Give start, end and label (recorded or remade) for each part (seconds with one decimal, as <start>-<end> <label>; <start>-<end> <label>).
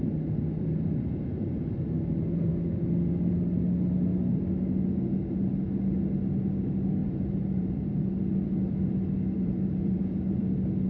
0.0-7.0 recorded; 7.0-8.0 remade; 8.0-9.4 recorded; 9.4-10.0 remade; 10.0-10.9 recorded